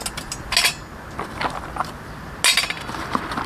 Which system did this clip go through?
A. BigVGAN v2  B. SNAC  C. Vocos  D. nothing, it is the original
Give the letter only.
D